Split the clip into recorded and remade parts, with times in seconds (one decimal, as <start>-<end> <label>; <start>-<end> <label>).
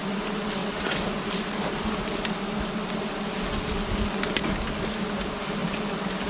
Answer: 0.0-6.3 recorded